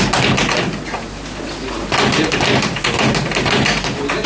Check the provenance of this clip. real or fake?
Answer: real